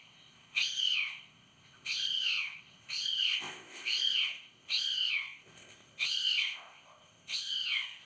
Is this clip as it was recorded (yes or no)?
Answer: no